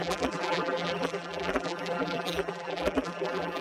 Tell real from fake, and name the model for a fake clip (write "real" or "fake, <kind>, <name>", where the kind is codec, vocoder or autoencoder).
fake, vocoder, BigVGAN v2